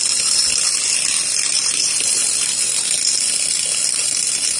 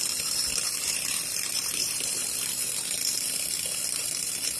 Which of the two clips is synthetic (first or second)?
second